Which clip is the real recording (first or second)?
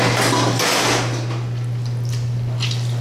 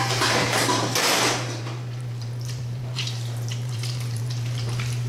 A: first